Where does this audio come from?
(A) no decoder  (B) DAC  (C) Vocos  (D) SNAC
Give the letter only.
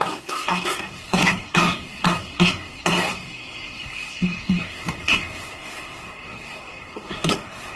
D